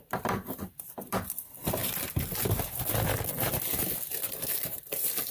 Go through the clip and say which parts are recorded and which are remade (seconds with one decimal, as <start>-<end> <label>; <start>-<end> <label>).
0.0-1.8 remade; 1.8-3.4 recorded; 3.4-5.3 remade